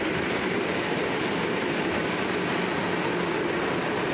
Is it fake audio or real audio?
fake